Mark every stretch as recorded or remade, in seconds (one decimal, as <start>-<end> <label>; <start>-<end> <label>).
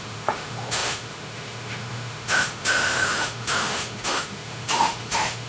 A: 0.0-5.5 remade